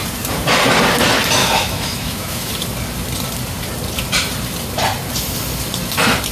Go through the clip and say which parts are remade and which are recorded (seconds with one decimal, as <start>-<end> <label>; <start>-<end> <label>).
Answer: 0.0-1.4 recorded; 1.4-2.5 remade; 2.5-6.3 recorded